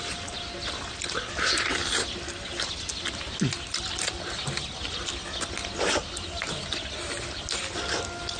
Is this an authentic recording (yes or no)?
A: yes